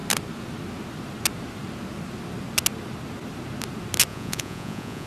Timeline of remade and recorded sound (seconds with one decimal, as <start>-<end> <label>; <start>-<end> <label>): 0.0-4.1 recorded; 4.1-5.1 remade